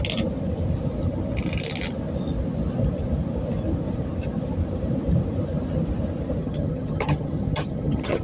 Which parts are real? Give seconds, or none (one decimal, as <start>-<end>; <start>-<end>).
0.0-6.4